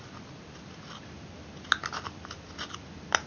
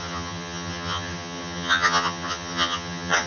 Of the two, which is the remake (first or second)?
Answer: second